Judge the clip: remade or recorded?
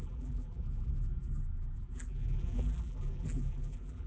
remade